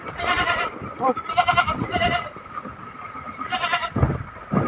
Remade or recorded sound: remade